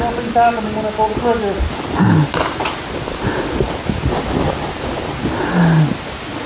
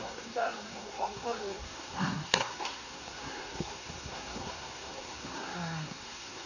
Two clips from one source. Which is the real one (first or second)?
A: first